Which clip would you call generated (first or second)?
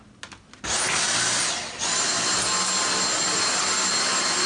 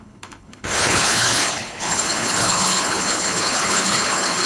second